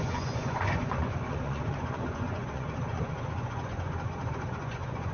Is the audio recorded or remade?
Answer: remade